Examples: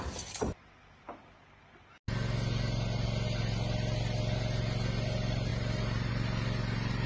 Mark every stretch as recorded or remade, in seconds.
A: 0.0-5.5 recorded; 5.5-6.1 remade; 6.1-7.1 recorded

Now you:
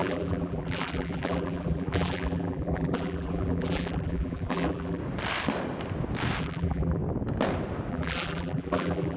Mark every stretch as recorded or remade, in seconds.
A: 0.0-5.0 remade; 5.0-6.4 recorded; 6.4-7.0 remade; 7.0-7.9 recorded; 7.9-9.2 remade

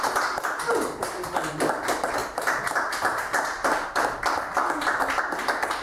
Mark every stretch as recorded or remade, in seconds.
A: 0.0-5.8 recorded

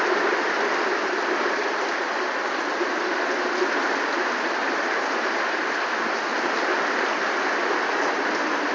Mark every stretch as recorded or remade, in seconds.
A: 0.0-4.6 recorded; 4.6-5.6 remade; 5.6-8.7 recorded

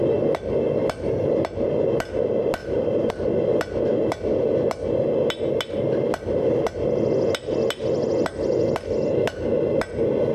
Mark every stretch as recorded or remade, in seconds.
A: 0.0-2.6 recorded; 2.6-3.1 remade; 3.1-10.3 recorded

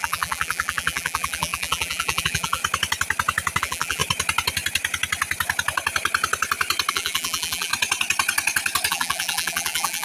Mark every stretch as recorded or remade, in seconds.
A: 0.0-2.6 remade; 2.6-3.6 recorded; 3.6-4.0 remade; 4.0-6.9 recorded; 6.9-7.7 remade; 7.7-8.9 recorded; 8.9-10.0 remade